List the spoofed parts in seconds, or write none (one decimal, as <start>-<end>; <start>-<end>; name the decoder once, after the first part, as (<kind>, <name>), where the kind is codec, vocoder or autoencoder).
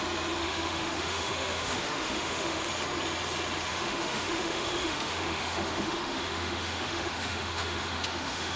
0.4-2.7 (autoencoder, DAC-VAE); 3.7-8.6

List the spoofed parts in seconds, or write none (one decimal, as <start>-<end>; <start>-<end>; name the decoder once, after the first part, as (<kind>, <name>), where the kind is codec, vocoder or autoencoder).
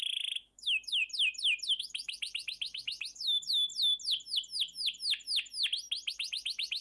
0.0-1.0 (autoencoder, DAC-VAE); 1.8-3.7; 6.1-6.8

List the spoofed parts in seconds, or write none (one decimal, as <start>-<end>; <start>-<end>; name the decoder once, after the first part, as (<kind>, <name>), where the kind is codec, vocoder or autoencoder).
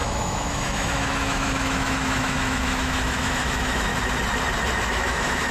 0.0-3.9 (autoencoder, DAC-VAE); 4.9-5.5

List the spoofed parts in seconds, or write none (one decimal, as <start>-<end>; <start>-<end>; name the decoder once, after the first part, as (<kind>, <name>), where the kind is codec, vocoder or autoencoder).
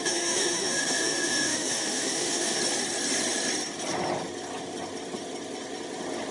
0.0-2.6 (autoencoder, DAC-VAE)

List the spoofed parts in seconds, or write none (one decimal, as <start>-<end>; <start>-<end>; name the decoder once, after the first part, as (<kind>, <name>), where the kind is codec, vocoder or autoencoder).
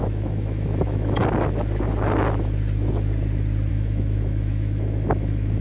0.0-1.2 (autoencoder, DAC-VAE); 3.7-5.6